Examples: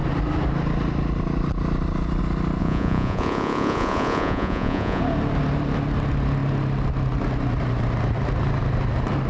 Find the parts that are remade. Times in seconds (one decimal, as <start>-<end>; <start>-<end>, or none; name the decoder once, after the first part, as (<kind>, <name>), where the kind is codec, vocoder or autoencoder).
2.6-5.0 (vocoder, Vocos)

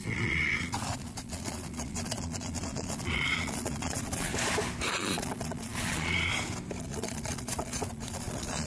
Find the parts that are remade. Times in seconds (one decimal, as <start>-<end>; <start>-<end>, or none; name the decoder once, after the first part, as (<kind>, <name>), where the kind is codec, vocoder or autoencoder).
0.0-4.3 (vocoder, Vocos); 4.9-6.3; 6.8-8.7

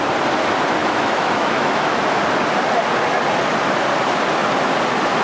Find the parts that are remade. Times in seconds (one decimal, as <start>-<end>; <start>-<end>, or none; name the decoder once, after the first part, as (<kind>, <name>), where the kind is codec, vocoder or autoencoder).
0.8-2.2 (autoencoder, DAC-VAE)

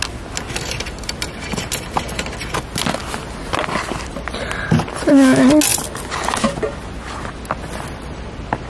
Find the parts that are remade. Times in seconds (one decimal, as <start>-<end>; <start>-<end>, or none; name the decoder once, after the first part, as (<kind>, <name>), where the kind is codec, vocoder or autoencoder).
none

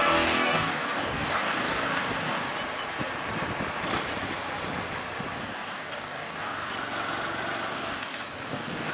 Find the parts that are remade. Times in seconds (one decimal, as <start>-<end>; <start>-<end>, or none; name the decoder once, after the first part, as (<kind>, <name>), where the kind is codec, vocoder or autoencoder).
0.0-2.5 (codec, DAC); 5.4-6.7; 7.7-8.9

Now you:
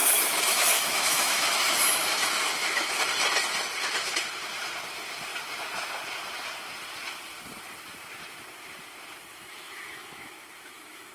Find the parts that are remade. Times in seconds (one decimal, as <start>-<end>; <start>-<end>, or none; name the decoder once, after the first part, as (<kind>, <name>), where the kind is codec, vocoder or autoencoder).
0.0-2.9 (autoencoder, DAC-VAE); 9.3-11.1

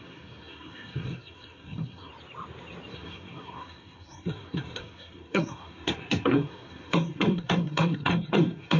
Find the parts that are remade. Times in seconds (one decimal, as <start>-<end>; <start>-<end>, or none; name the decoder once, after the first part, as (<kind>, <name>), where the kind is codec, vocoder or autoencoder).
0.0-2.1 (codec, SNAC); 2.9-8.8